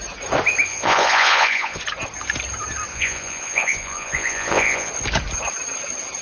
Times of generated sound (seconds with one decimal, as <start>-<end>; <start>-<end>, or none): 0.7-1.8; 2.9-4.9